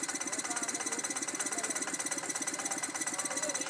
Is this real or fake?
real